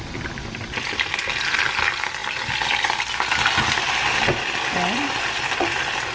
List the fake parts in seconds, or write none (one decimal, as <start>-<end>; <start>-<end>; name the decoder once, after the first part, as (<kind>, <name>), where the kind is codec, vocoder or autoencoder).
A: none